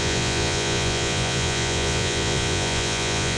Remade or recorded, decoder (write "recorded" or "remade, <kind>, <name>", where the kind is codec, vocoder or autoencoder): remade, vocoder, Vocos